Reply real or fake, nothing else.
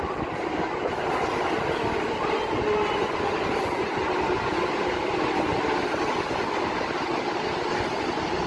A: real